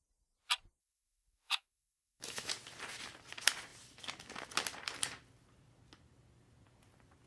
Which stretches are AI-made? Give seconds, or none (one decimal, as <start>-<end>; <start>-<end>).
0.8-2.5